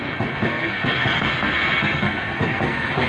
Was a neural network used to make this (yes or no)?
yes